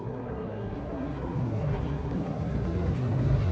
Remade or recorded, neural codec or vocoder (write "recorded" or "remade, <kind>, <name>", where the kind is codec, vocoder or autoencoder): remade, codec, SNAC